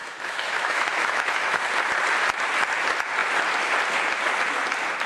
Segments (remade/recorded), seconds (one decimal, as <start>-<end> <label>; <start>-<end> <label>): 0.0-1.6 remade; 1.6-5.1 recorded